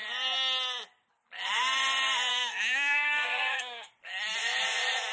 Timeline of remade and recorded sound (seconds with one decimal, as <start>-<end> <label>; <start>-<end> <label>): 0.0-2.3 recorded; 2.3-3.9 remade; 3.9-5.1 recorded